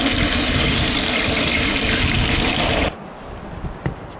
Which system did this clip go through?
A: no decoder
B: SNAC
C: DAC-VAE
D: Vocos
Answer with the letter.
A